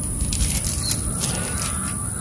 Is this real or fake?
real